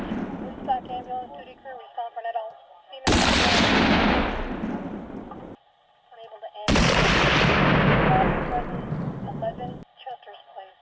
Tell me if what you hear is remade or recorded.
recorded